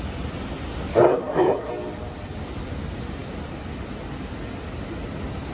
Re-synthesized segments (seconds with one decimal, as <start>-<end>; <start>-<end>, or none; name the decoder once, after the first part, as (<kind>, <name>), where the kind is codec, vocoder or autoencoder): 0.9-1.7 (codec, SNAC)